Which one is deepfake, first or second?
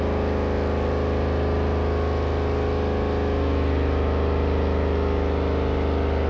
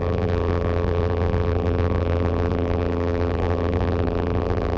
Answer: second